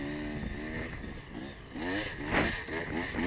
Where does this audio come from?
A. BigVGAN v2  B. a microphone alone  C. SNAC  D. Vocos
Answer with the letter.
B